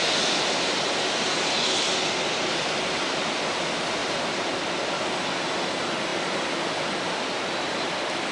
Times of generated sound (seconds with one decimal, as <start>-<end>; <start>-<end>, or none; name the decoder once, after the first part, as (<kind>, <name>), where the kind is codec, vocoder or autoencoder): none